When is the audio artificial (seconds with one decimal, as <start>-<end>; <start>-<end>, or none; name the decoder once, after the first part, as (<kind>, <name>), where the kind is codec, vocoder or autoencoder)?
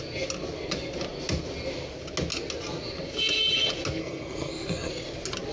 4.0-4.9 (codec, SNAC)